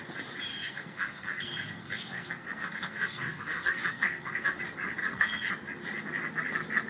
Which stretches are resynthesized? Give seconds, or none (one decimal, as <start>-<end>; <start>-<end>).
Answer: 0.5-4.6; 5.0-5.5